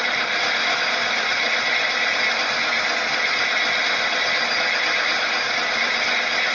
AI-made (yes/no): no